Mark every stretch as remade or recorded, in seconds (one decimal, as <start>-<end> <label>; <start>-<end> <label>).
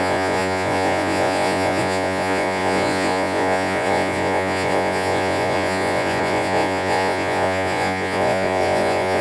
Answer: 0.0-9.2 remade